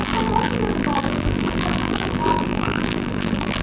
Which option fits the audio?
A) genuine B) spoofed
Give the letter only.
B